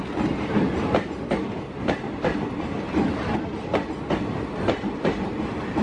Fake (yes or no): no